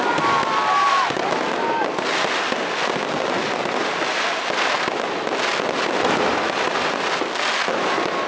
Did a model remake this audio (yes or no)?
no